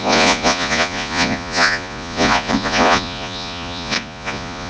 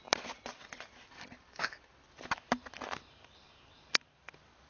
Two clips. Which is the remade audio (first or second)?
first